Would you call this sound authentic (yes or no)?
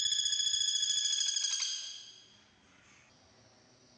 yes